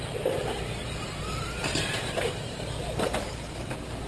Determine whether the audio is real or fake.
real